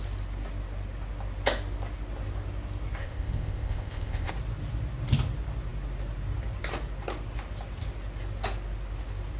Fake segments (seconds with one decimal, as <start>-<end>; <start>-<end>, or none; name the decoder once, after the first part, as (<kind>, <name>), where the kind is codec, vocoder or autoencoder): 3.0-4.3 (codec, ZipCodec)